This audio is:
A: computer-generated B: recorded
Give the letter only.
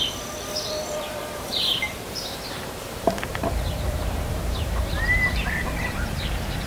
A